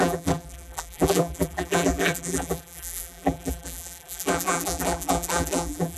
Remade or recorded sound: remade